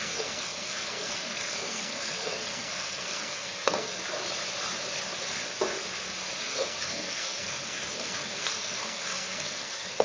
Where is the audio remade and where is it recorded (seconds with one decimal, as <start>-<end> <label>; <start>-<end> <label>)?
0.0-4.0 remade; 4.0-6.4 recorded; 6.4-10.0 remade